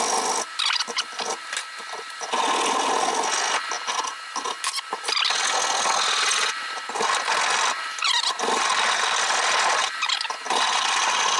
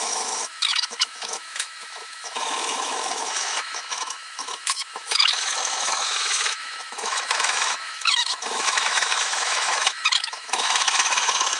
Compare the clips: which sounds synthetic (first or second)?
second